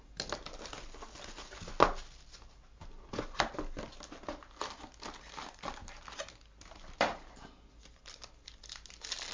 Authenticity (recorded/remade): recorded